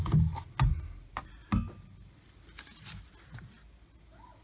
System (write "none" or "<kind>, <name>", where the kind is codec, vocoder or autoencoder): none